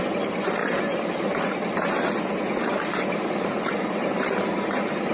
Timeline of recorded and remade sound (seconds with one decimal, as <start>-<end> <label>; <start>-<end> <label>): 0.0-5.1 recorded